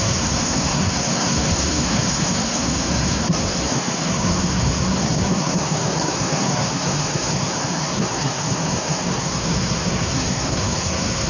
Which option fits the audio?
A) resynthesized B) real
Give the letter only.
A